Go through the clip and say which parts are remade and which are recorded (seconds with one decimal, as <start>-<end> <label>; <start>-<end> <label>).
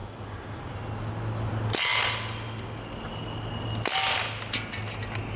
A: 0.0-5.4 recorded